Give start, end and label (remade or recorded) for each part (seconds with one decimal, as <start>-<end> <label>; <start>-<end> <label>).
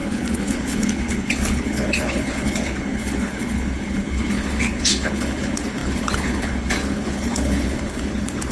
0.0-8.5 remade